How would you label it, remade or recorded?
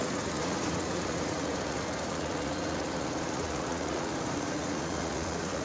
remade